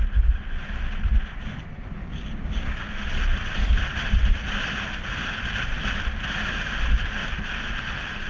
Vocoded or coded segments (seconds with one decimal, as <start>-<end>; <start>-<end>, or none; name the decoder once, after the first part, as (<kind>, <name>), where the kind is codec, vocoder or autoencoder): 2.0-2.9 (codec, DAC)